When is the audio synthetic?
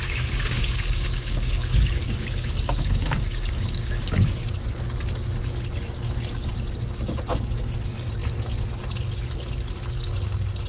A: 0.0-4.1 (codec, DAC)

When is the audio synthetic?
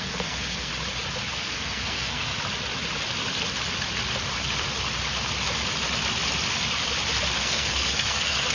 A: 0.0-0.7 (codec, SNAC); 1.3-2.3; 7.4-8.5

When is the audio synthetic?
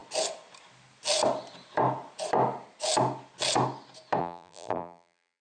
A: 4.2-5.4 (vocoder, BigVGAN v2)